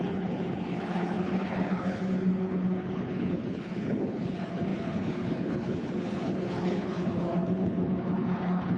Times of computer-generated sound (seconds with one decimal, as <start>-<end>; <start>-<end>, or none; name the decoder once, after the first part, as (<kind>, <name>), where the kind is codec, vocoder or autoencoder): 0.0-8.8 (codec, HILCodec)